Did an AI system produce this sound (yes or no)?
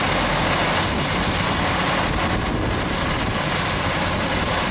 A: no